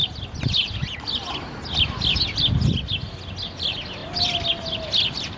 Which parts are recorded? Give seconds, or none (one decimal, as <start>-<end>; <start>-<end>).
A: 0.0-5.4